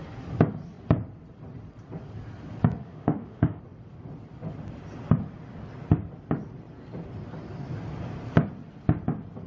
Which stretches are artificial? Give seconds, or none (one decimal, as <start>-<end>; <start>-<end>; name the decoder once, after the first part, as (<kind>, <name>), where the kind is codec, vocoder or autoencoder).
2.8-3.6 (autoencoder, DAC-VAE)